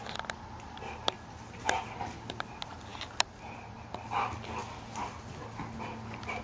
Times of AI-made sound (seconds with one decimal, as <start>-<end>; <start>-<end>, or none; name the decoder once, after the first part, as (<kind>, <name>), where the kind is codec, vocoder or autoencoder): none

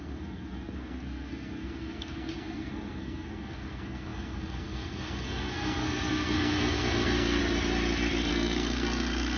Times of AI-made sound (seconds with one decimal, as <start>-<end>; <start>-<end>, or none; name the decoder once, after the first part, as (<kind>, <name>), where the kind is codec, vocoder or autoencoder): 0.0-7.4 (codec, SNAC); 8.3-9.4

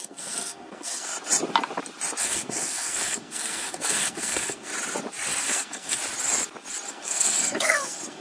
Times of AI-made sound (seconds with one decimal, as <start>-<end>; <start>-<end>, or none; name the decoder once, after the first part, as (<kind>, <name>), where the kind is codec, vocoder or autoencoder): 0.0-1.1 (codec, SNAC); 2.2-4.7; 5.4-6.0; 6.9-8.2